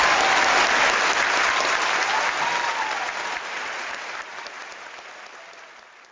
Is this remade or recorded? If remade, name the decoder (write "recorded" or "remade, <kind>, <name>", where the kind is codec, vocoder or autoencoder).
recorded